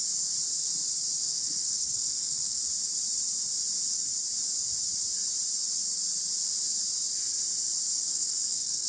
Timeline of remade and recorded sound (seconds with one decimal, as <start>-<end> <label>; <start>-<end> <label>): 0.0-1.2 recorded; 1.2-2.6 remade; 2.6-8.1 recorded; 8.1-8.9 remade